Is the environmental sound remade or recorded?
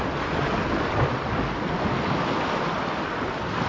recorded